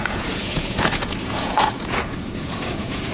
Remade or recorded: remade